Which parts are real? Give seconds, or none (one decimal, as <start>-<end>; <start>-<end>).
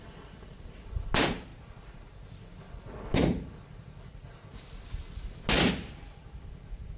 0.0-7.0